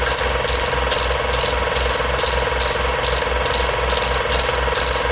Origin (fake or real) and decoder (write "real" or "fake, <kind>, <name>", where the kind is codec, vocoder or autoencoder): real